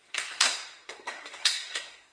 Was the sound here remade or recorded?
remade